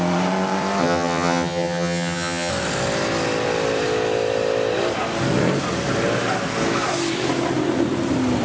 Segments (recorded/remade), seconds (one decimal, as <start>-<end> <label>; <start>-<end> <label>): 0.0-0.8 recorded; 0.8-2.5 remade; 2.5-8.4 recorded